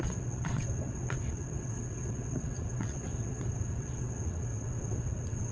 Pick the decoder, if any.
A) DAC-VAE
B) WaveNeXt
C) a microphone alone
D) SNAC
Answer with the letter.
B